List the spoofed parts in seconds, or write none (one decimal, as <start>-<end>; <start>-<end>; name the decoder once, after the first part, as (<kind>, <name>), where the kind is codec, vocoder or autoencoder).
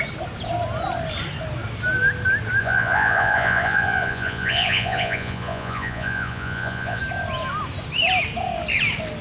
2.6-7.0 (vocoder, Vocos)